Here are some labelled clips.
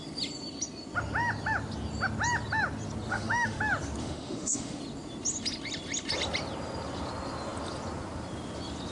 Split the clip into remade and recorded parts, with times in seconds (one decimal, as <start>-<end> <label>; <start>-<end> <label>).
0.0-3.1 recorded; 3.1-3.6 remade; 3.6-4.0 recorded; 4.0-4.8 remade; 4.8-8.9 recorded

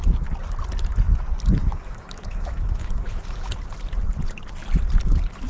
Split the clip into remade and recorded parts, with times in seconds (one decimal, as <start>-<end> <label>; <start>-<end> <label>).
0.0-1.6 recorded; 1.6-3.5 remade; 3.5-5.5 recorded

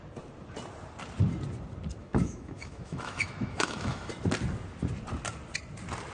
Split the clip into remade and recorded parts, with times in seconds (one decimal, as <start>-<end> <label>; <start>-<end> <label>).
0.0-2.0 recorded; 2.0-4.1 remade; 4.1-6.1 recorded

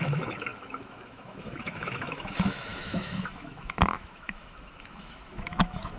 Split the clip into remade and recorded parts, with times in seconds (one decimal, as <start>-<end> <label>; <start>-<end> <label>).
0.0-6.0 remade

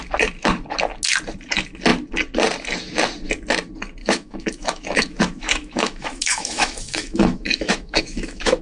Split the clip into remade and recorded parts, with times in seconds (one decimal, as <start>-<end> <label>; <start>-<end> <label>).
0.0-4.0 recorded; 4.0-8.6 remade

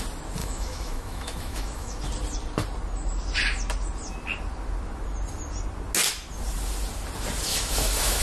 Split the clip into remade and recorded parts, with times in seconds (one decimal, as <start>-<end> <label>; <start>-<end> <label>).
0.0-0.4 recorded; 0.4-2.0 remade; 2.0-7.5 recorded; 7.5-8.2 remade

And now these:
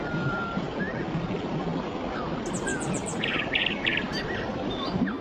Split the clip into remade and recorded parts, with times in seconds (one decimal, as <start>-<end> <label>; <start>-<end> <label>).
0.0-5.2 recorded